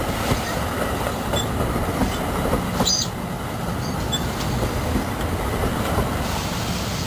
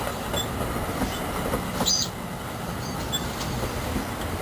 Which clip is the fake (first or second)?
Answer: first